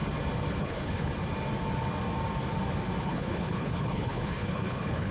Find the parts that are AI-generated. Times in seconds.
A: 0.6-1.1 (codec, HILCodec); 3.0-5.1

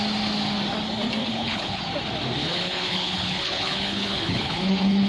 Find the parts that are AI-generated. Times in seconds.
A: 1.2-1.8 (codec, HILCodec); 2.4-5.1

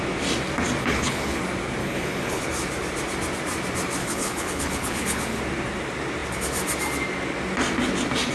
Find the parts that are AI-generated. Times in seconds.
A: 0.8-1.4 (codec, HILCodec); 1.8-2.4; 4.0-5.4

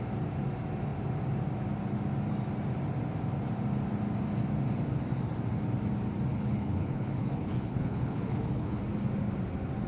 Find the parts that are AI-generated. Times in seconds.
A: 6.3-8.8 (codec, HILCodec)

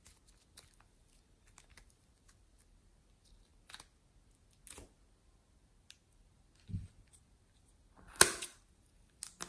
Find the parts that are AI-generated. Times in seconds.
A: none

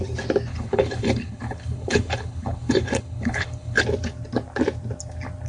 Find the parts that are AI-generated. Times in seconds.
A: 0.5-3.8 (codec, HILCodec)